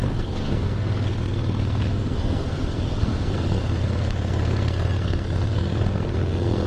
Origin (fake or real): fake